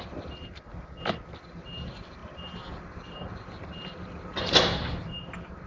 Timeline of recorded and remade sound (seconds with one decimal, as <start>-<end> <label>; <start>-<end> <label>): 0.0-5.7 recorded